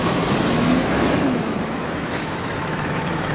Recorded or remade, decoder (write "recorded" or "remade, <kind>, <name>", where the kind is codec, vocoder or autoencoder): remade, autoencoder, DAC-VAE